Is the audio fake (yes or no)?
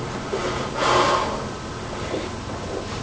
no